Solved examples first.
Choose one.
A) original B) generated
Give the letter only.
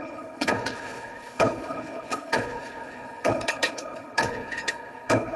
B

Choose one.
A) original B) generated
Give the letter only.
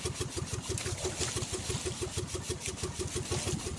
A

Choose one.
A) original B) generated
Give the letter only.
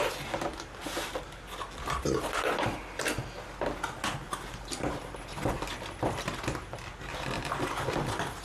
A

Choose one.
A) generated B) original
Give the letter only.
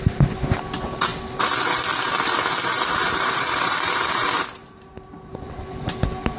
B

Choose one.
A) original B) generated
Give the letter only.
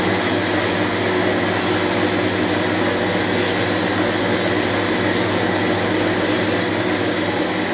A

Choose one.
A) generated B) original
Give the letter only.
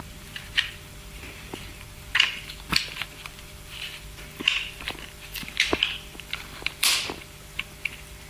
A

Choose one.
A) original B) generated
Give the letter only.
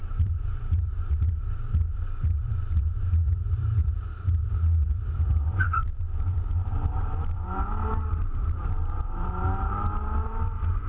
B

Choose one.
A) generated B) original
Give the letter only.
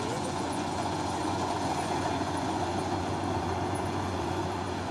A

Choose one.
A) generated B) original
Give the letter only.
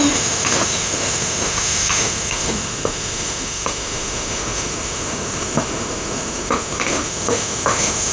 A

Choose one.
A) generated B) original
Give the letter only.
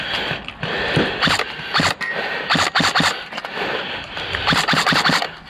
B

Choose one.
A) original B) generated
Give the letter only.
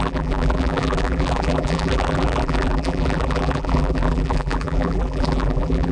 B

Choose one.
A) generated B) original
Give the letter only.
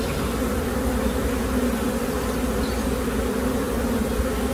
B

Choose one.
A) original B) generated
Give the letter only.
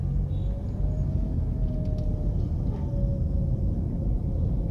A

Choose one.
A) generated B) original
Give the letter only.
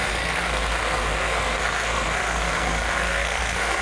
A